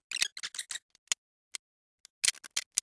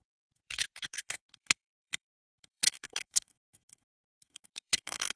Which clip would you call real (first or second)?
first